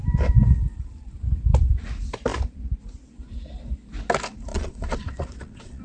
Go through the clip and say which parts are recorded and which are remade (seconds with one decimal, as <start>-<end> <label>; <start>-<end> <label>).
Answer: 0.0-4.5 recorded; 4.5-5.8 remade